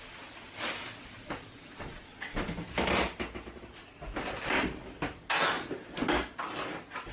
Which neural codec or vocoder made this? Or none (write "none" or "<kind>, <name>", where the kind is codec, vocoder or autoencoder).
none